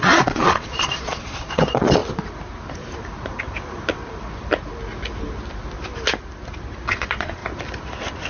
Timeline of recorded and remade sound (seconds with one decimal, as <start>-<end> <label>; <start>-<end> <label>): 0.0-2.0 remade; 2.0-6.9 recorded; 6.9-7.4 remade; 7.4-8.3 recorded